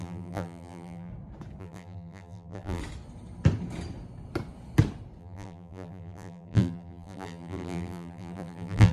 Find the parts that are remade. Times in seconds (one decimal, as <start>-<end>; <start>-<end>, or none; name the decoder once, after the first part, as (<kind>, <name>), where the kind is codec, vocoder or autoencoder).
0.0-1.1 (vocoder, BigVGAN v2); 1.6-2.8; 5.2-8.9